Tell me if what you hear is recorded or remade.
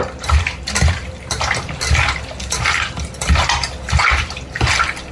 recorded